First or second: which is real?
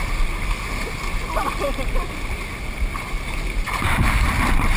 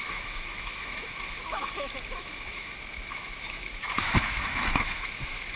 first